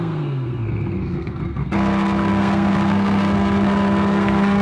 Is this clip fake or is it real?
fake